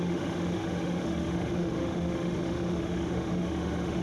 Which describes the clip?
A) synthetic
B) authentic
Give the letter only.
A